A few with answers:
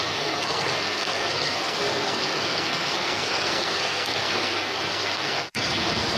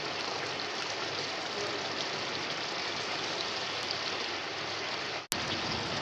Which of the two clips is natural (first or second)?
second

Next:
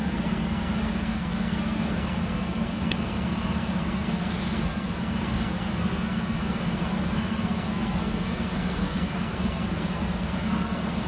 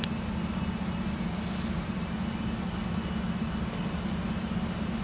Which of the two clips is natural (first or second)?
second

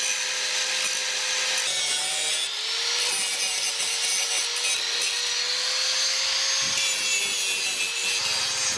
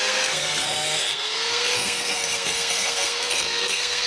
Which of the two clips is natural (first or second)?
first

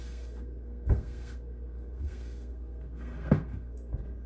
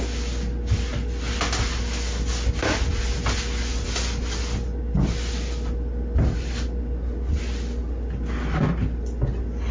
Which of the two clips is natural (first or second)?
second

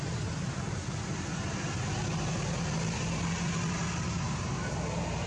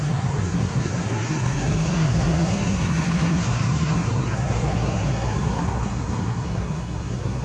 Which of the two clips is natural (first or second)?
first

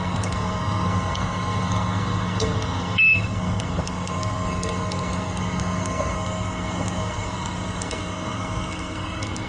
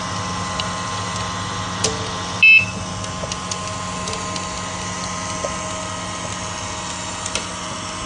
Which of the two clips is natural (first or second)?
second